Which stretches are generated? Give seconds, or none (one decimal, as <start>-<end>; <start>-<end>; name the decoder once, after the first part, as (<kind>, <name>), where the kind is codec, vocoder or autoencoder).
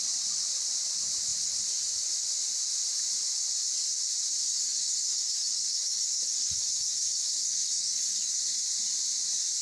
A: 4.4-8.4 (codec, DAC)